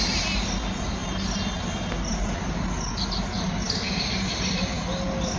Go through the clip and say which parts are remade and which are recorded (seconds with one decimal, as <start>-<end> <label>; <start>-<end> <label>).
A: 0.0-5.4 recorded